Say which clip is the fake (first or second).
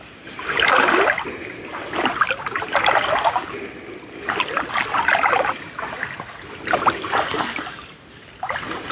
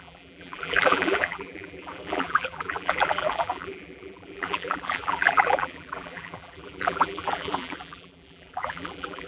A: second